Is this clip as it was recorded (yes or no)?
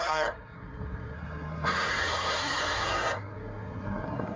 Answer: no